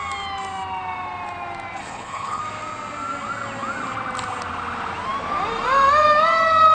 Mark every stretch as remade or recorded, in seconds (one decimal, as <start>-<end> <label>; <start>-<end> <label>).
0.0-1.8 recorded; 1.8-2.4 remade; 2.4-6.7 recorded